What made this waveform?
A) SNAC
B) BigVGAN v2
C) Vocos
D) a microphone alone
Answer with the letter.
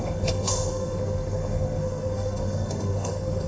A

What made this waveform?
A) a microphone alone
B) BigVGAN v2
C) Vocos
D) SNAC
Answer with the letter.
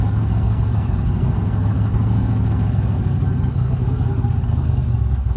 D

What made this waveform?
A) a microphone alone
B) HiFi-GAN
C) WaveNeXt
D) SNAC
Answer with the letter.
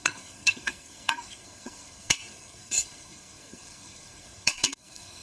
D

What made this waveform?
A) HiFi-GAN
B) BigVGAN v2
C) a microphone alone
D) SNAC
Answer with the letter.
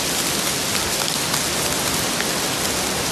C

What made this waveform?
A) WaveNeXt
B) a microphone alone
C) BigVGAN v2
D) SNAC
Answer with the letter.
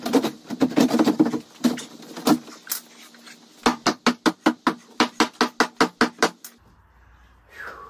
B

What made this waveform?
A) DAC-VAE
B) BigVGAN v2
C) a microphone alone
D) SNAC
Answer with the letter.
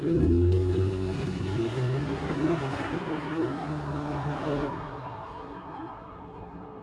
D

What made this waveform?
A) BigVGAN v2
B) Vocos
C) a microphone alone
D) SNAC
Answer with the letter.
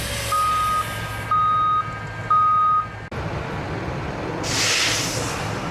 C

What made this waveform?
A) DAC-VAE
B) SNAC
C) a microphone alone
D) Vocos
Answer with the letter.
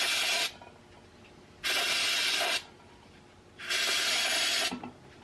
C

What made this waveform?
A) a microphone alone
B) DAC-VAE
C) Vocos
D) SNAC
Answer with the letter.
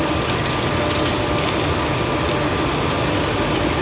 A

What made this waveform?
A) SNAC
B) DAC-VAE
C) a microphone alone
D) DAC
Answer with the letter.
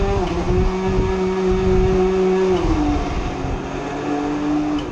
C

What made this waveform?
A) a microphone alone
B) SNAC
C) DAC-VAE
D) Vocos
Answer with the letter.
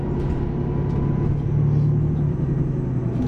A